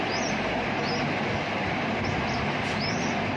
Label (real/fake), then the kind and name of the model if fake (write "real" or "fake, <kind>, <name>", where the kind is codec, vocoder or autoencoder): fake, vocoder, BigVGAN v2